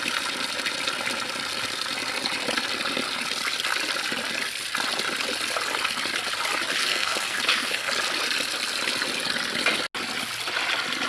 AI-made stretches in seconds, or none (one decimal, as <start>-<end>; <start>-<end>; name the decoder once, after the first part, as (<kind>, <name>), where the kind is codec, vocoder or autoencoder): 6.8-7.9 (codec, SNAC)